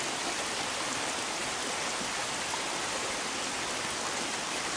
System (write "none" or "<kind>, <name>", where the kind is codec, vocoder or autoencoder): none